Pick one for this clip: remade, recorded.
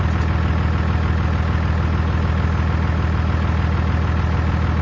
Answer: recorded